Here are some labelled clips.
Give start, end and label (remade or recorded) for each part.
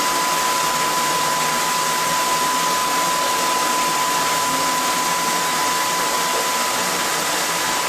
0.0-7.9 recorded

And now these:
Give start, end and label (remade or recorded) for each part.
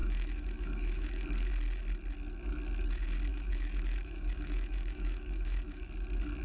0.0-1.5 remade; 1.5-3.3 recorded; 3.3-5.9 remade; 5.9-6.4 recorded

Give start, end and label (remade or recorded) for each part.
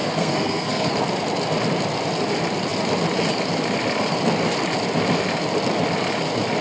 0.0-0.9 remade; 0.9-6.6 recorded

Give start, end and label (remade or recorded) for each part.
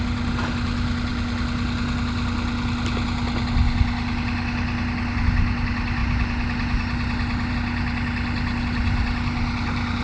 0.0-10.0 recorded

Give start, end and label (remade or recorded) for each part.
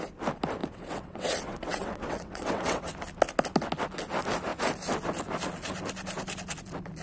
0.0-0.6 recorded; 0.6-2.9 remade; 2.9-7.0 recorded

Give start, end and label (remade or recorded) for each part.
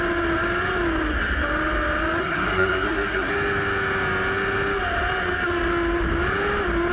0.0-2.2 recorded; 2.2-3.3 remade; 3.3-6.9 recorded